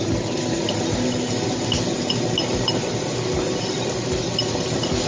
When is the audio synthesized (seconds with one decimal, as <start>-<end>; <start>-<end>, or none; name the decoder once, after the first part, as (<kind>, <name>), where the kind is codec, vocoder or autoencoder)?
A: none